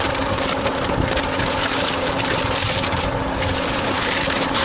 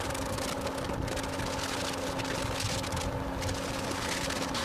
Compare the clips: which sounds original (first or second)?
second